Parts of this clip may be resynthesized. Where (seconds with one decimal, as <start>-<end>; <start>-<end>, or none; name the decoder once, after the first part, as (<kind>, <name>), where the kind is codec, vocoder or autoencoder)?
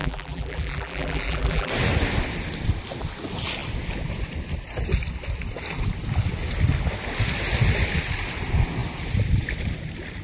0.0-1.7 (vocoder, BigVGAN v2)